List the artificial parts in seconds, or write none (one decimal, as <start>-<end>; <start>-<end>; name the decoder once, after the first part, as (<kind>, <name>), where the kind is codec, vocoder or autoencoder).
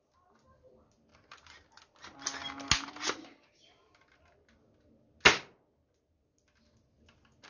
none